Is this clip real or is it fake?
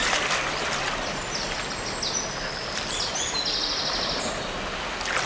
real